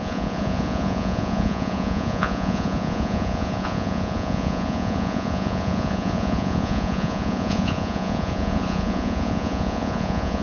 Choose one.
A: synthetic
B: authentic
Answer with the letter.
A